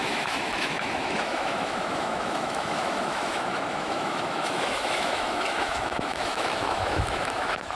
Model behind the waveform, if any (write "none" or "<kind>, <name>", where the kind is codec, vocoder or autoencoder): autoencoder, DAC-VAE